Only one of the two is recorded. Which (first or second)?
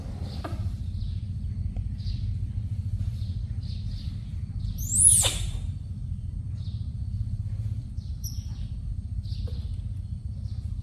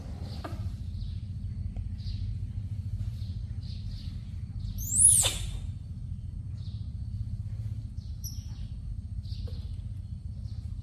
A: second